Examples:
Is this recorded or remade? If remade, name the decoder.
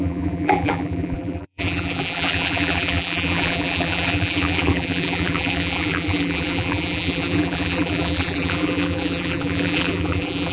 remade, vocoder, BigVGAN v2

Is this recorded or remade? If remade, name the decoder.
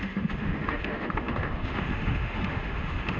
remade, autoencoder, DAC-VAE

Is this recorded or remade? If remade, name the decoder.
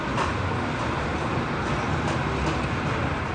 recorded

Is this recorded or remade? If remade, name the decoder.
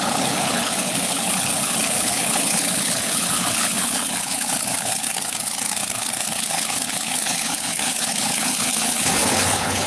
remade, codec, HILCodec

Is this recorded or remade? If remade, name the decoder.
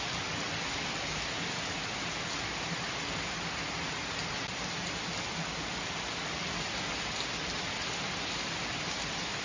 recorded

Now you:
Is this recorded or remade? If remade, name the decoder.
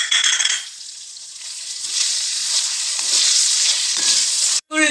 remade, vocoder, Vocos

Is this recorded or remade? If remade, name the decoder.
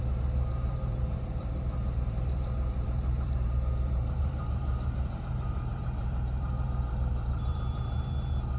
remade, vocoder, BigVGAN v2